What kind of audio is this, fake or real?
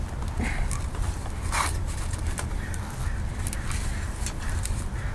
fake